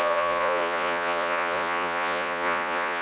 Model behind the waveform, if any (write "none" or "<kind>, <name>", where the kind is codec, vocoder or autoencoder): vocoder, Vocos